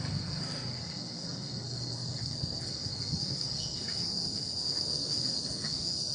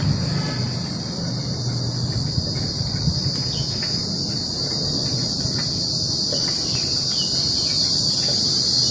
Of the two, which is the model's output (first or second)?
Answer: first